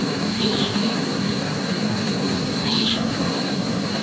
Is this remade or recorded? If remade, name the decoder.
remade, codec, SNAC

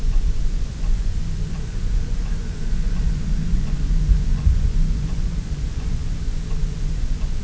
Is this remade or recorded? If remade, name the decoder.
remade, vocoder, Vocos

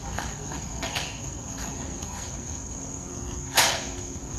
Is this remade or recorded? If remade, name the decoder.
remade, codec, SNAC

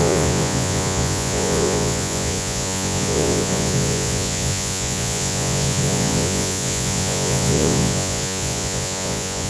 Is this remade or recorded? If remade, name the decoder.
remade, vocoder, Vocos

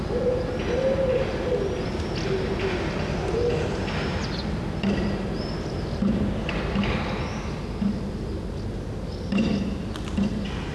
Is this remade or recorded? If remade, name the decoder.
recorded